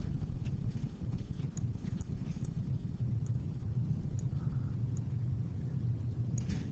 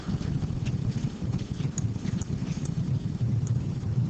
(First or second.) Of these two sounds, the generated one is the second